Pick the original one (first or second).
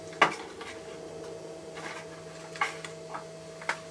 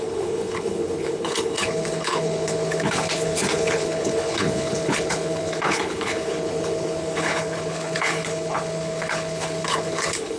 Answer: first